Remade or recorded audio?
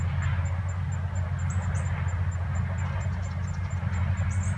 recorded